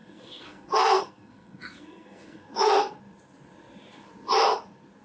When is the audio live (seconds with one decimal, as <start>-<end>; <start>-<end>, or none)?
3.0-5.0